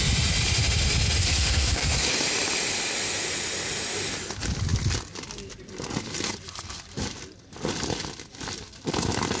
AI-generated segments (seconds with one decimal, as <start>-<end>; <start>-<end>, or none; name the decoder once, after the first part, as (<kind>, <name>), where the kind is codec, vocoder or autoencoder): 1.2-2.1 (codec, SNAC)